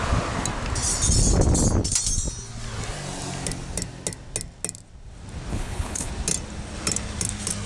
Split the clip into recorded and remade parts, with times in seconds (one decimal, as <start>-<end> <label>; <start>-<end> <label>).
0.0-5.5 recorded; 5.5-6.1 remade; 6.1-7.7 recorded